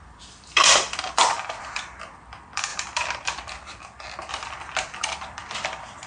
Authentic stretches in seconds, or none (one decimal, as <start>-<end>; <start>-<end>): none